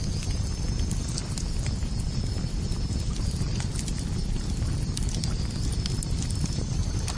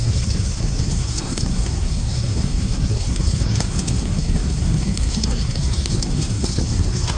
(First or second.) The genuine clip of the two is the first